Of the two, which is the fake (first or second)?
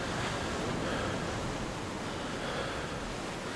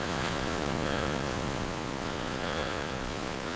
second